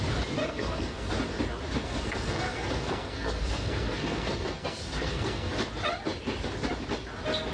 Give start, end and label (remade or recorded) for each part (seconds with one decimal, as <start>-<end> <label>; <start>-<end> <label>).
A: 0.0-0.4 recorded; 0.4-1.1 remade; 1.1-1.8 recorded; 1.8-5.5 remade; 5.5-7.5 recorded